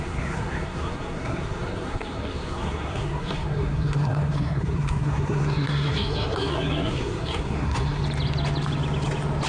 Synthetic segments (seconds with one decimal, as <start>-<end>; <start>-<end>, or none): 0.0-8.0